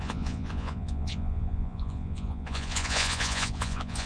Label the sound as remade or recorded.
remade